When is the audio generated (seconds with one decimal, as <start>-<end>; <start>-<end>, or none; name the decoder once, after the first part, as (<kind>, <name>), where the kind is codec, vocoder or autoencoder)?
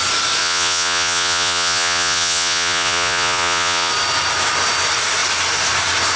0.4-3.9 (vocoder, Vocos)